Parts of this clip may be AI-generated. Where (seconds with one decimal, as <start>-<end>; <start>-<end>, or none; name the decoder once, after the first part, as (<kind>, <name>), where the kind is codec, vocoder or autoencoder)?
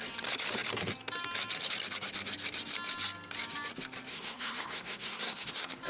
4.1-5.5 (codec, SNAC)